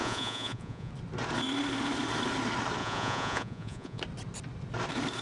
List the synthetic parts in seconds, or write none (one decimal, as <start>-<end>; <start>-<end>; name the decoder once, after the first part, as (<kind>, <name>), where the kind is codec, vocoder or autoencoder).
0.0-0.9 (vocoder, Vocos); 2.8-4.0